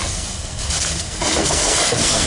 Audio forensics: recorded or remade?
remade